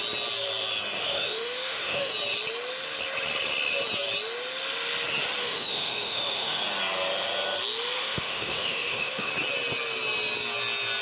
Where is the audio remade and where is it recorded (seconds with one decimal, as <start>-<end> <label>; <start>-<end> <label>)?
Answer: 0.0-1.0 recorded; 1.0-2.1 remade; 2.1-5.4 recorded; 5.4-6.6 remade; 6.6-8.0 recorded; 8.0-9.3 remade; 9.3-11.0 recorded